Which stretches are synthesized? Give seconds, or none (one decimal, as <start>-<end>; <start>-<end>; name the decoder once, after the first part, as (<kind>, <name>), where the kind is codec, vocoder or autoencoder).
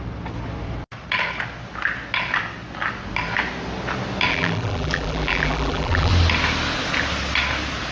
4.3-6.1 (vocoder, BigVGAN v2)